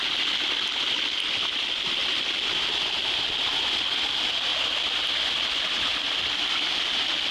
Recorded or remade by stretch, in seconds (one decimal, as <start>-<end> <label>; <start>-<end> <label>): 0.0-7.3 recorded